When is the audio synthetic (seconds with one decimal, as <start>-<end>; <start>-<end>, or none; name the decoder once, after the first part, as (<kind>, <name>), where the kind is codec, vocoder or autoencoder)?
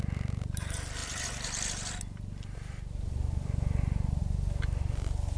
1.0-4.2 (vocoder, BigVGAN v2)